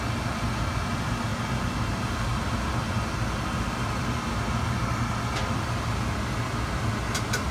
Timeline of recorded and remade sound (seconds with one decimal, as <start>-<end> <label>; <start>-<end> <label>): 0.0-7.5 recorded